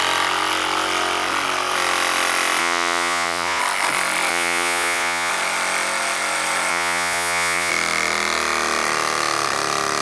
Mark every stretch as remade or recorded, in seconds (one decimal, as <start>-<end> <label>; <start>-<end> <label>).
0.0-2.6 recorded; 2.6-3.6 remade; 3.6-4.3 recorded; 4.3-5.3 remade; 5.3-6.7 recorded; 6.7-7.7 remade; 7.7-10.0 recorded